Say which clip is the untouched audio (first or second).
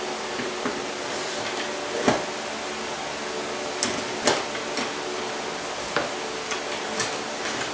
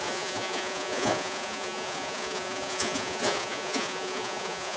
first